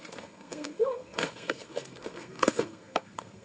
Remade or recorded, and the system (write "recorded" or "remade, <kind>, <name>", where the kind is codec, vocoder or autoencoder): remade, codec, SNAC